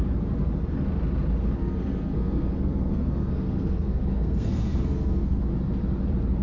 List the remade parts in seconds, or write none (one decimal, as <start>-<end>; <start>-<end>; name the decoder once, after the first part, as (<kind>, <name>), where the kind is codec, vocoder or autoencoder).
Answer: 1.6-5.4 (codec, SNAC)